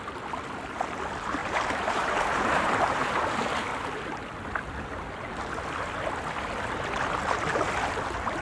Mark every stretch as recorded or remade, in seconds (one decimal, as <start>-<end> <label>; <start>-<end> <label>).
0.0-1.4 recorded; 1.4-3.2 remade; 3.2-8.4 recorded